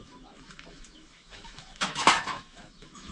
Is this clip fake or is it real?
fake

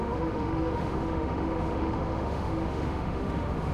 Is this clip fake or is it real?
fake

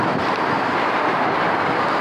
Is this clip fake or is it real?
real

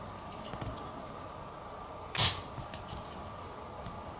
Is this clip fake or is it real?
real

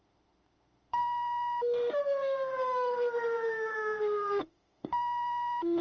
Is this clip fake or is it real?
fake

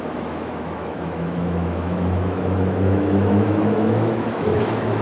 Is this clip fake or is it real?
fake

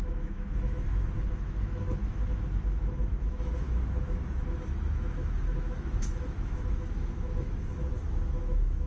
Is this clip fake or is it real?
fake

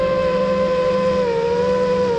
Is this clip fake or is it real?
real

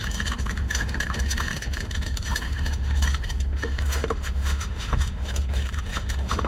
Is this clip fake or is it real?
fake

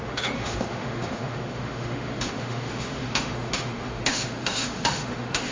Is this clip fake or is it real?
fake